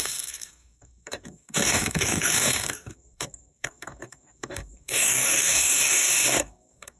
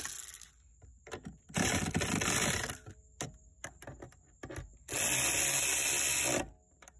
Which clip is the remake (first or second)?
first